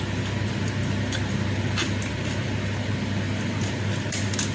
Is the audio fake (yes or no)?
yes